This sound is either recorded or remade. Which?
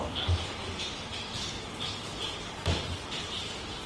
recorded